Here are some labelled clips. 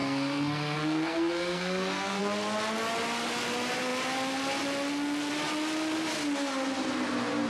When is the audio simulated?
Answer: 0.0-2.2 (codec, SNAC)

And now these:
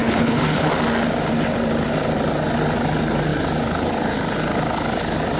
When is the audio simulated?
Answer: 0.0-0.7 (codec, HILCodec)

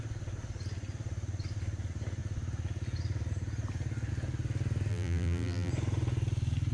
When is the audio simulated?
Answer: 4.9-5.7 (vocoder, BigVGAN v2)

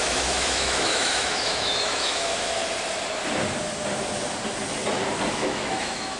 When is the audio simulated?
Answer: 0.0-2.6 (autoencoder, DAC-VAE); 5.3-6.2

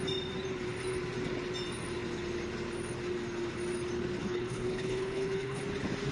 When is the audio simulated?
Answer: 4.2-5.6 (codec, HILCodec)